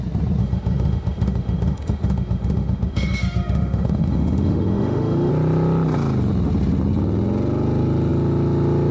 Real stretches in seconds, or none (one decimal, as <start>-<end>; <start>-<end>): 0.0-0.4; 5.3-8.9